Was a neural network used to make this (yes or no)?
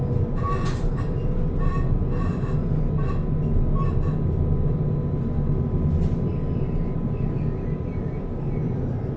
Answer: no